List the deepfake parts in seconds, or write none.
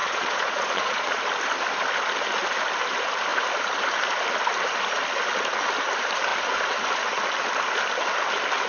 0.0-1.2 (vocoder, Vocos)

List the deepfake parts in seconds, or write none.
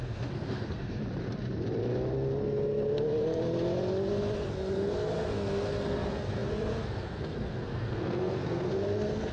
0.0-1.0 (codec, SNAC); 4.5-9.3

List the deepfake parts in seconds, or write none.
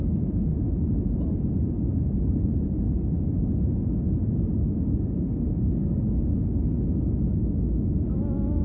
0.5-3.6 (vocoder, BigVGAN v2)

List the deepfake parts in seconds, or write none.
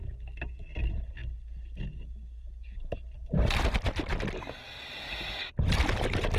none